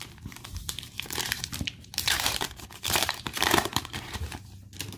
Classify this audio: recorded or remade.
remade